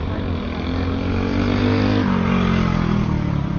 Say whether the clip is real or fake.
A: real